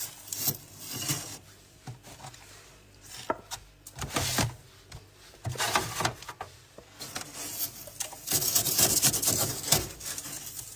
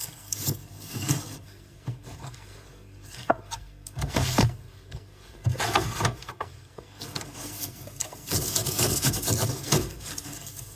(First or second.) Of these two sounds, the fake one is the second